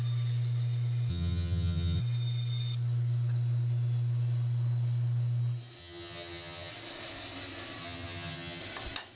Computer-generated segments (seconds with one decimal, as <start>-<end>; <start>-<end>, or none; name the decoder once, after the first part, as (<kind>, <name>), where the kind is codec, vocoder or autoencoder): 1.1-2.0 (vocoder, HiFi-GAN); 5.8-6.7; 7.8-8.6